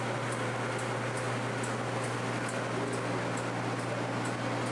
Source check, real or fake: real